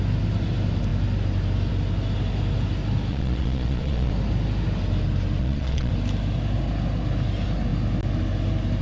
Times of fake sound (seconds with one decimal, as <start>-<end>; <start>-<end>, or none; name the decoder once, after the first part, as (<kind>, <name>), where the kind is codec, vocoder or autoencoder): 3.1-4.1 (vocoder, Vocos); 5.4-5.9